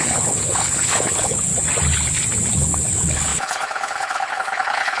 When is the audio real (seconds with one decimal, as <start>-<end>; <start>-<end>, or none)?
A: 1.5-2.5